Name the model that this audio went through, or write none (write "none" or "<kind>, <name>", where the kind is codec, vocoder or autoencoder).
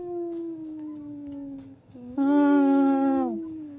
codec, DAC